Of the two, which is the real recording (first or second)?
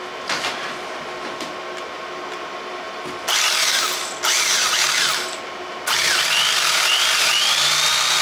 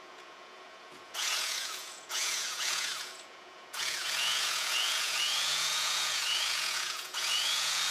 first